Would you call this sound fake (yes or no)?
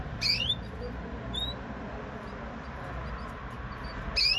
no